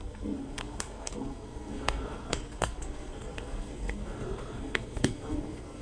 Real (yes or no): no